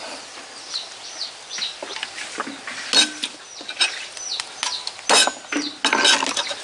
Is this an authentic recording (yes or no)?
yes